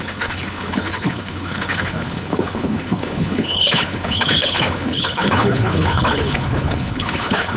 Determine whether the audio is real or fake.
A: fake